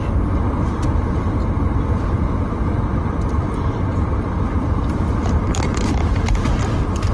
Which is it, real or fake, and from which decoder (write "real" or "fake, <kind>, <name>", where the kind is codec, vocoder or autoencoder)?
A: fake, vocoder, BigVGAN v2